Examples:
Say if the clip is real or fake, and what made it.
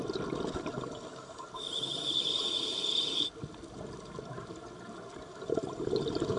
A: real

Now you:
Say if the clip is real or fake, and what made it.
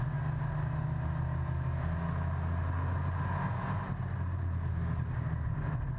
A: real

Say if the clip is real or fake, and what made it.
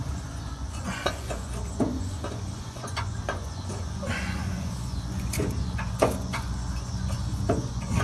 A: fake, vocoder, Vocos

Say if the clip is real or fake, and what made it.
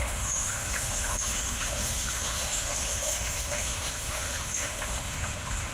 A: fake, autoencoder, DAC-VAE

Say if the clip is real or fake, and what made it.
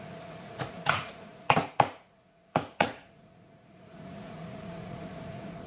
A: fake, vocoder, Vocos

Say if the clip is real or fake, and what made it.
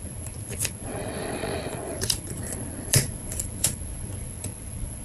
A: fake, vocoder, Vocos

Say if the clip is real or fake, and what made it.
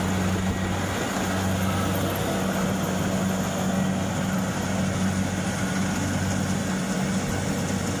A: real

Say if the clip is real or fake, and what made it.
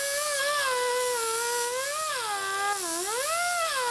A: real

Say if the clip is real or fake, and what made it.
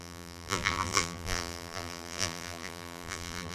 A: fake, vocoder, BigVGAN v2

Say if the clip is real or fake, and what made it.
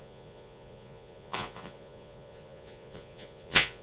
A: fake, vocoder, Vocos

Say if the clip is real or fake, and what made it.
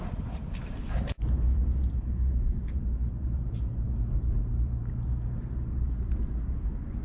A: fake, vocoder, BigVGAN v2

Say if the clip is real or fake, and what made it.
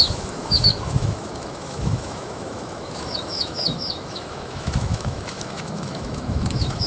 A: fake, autoencoder, DAC-VAE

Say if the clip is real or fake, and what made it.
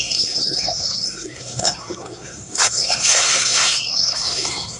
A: fake, codec, SNAC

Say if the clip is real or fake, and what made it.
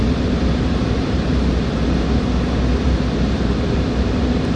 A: real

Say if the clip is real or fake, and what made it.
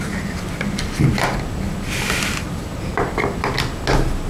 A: real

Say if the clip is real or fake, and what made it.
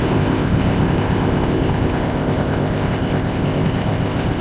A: fake, codec, ZipCodec